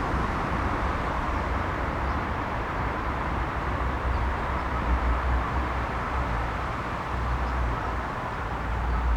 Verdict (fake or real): fake